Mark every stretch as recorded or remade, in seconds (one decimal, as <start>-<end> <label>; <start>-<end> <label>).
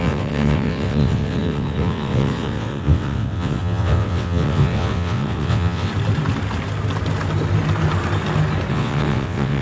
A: 0.0-5.9 remade; 5.9-8.7 recorded; 8.7-9.6 remade